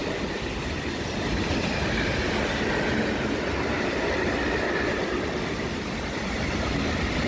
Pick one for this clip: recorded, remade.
recorded